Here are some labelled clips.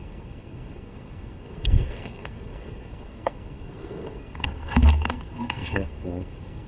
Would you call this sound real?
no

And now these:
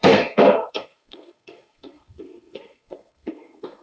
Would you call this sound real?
no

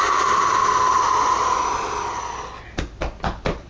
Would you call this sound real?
yes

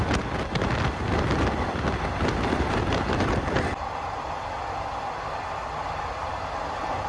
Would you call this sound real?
yes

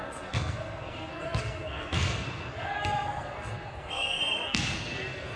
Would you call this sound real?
no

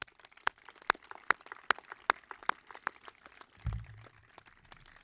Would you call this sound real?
yes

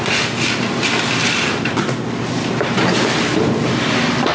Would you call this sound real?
yes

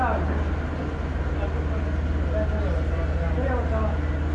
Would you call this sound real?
yes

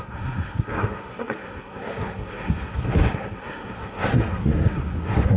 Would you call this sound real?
no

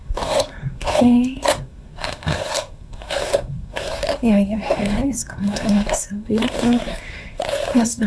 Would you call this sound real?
no